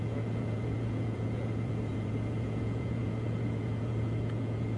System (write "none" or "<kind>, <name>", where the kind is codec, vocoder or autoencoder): vocoder, Vocos